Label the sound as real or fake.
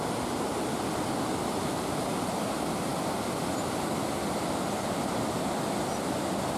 real